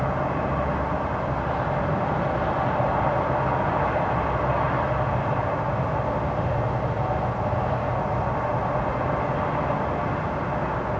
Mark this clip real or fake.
real